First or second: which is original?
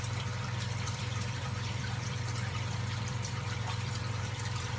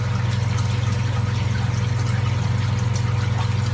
second